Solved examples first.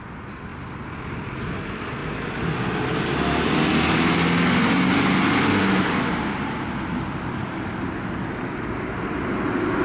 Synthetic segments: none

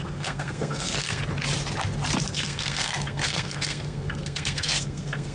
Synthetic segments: 0.0-1.2 (codec, SNAC); 2.3-5.3

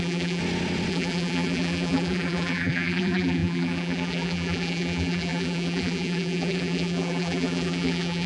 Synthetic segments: 0.0-0.4 (vocoder, BigVGAN v2); 0.9-8.3

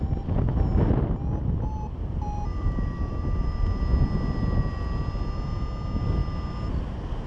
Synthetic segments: 2.5-3.8 (vocoder, BigVGAN v2)